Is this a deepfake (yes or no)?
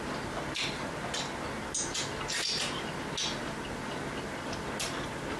no